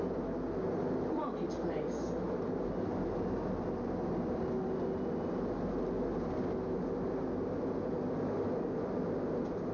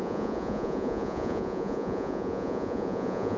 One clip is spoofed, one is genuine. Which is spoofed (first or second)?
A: second